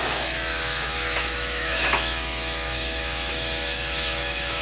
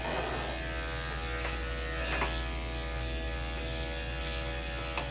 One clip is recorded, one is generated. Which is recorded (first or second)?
second